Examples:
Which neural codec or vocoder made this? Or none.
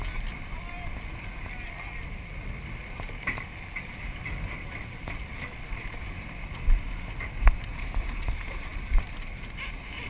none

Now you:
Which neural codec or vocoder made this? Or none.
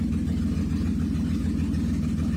none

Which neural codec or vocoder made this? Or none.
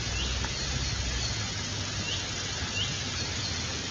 none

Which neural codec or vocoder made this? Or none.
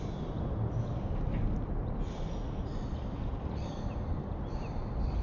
none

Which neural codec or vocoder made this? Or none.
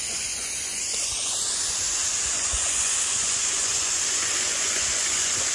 vocoder, Vocos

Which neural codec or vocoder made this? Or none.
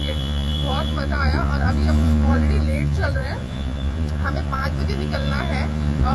vocoder, Vocos